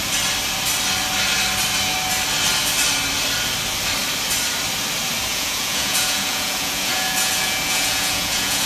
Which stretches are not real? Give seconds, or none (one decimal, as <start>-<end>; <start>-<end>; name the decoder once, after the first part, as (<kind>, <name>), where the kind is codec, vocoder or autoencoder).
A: 5.3-8.7 (vocoder, Vocos)